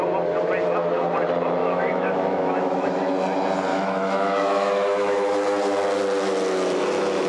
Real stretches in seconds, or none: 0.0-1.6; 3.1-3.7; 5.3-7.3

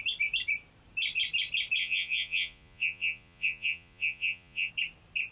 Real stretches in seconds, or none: 0.0-1.8; 4.7-5.3

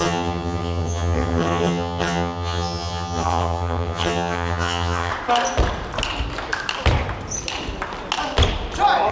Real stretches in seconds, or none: 5.1-9.1

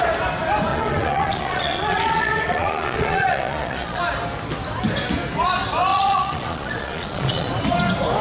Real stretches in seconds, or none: 0.0-0.7; 4.0-5.9; 7.5-8.2